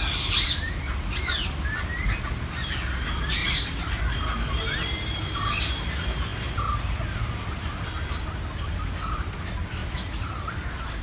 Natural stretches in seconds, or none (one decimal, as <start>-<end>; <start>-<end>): 0.0-3.4; 4.0-9.8